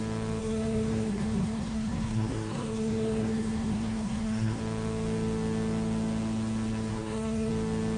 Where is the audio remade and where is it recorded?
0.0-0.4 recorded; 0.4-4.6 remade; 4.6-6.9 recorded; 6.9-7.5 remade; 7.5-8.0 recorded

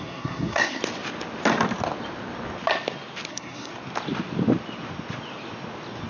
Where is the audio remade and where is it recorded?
0.0-0.8 remade; 0.8-3.3 recorded; 3.3-3.7 remade; 3.7-6.1 recorded

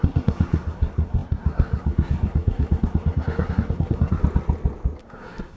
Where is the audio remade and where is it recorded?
0.0-4.2 remade; 4.2-5.0 recorded; 5.0-5.6 remade